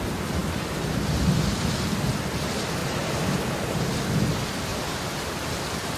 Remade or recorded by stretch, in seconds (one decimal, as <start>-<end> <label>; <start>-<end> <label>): 0.0-0.4 recorded; 0.4-1.1 remade; 1.1-2.8 recorded; 2.8-3.8 remade; 3.8-4.7 recorded; 4.7-6.0 remade